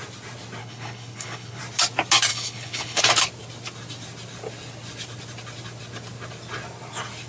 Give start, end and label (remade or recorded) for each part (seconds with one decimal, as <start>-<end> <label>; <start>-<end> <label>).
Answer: 0.0-0.6 recorded; 0.6-1.6 remade; 1.6-2.3 recorded; 2.3-3.0 remade; 3.0-7.3 recorded

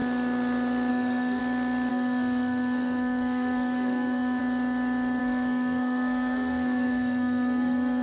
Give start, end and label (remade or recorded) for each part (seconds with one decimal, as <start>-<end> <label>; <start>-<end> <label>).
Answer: 0.0-0.9 recorded; 0.9-1.4 remade; 1.4-1.9 recorded; 1.9-4.4 remade; 4.4-5.2 recorded; 5.2-8.0 remade